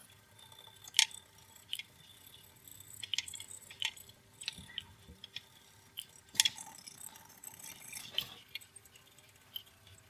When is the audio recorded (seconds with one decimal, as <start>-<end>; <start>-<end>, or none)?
0.0-10.1